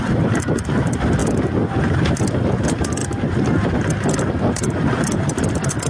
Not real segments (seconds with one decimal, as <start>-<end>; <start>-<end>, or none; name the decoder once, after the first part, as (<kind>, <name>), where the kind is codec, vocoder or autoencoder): 0.0-1.2 (vocoder, BigVGAN v2); 1.8-5.9